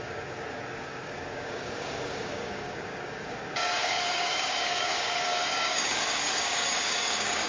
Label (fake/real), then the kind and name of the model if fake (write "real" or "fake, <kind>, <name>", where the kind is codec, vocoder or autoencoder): fake, codec, DAC